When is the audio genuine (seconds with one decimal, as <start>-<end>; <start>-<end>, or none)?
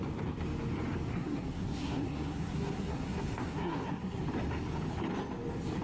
0.0-1.1; 4.2-5.8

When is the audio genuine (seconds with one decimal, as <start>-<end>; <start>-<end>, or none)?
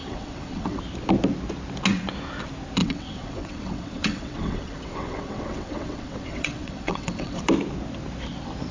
0.8-2.8; 7.4-8.7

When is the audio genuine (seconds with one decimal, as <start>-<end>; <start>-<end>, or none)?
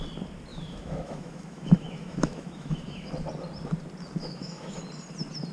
0.0-0.5; 3.1-4.2; 4.8-5.5